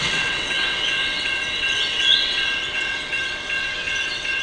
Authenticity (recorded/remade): remade